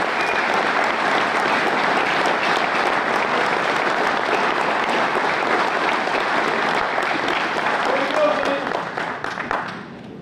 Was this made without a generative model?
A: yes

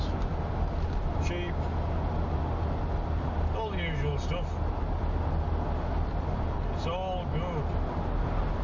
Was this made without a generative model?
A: yes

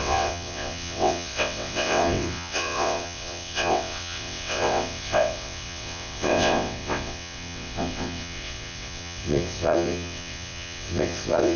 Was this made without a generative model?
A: no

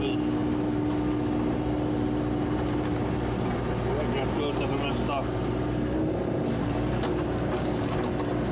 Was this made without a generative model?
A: yes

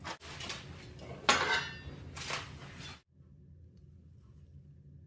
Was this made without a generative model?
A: yes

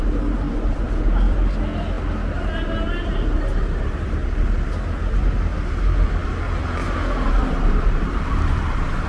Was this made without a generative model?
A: yes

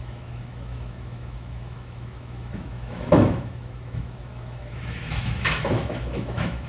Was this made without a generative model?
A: no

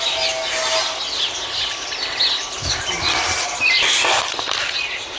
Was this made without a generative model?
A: yes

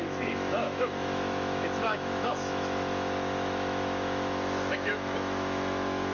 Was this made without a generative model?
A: no